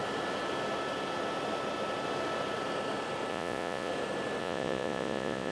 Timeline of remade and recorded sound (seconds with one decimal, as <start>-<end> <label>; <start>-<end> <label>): 0.0-3.3 recorded; 3.3-3.9 remade; 3.9-4.4 recorded; 4.4-5.5 remade